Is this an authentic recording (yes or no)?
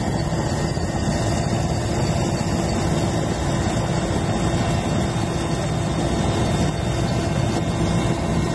yes